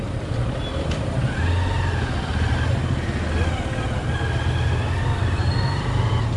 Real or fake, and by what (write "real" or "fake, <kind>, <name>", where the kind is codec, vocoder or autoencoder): real